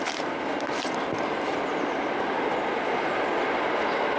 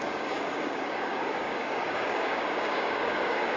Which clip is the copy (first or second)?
second